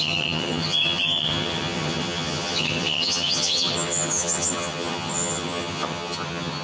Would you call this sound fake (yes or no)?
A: yes